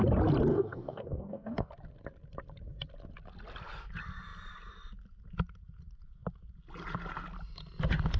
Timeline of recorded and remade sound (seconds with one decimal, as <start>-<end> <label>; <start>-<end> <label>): 0.0-0.5 recorded; 0.5-1.7 remade; 1.7-8.2 recorded